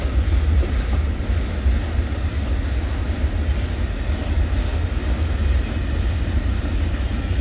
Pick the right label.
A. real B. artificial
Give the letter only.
A